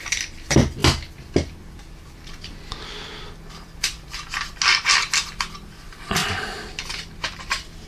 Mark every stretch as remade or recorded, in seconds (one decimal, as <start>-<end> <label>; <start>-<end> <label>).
0.0-7.9 recorded